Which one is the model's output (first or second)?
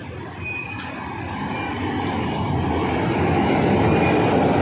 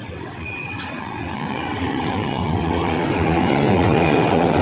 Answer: second